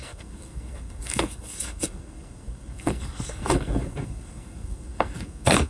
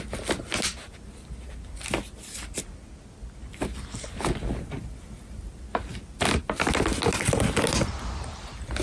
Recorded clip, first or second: second